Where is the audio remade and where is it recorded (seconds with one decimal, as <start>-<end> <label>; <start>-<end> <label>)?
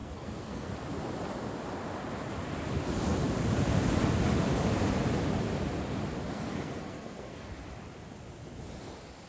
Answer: 0.0-0.7 remade; 0.7-6.3 recorded; 6.3-7.5 remade; 7.5-9.3 recorded